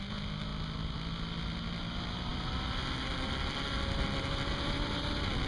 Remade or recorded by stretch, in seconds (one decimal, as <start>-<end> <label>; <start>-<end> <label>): 0.0-5.5 recorded